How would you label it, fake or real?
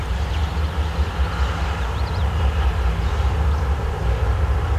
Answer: fake